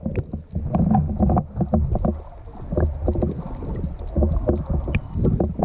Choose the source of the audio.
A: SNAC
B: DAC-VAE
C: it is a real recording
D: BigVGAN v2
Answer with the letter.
C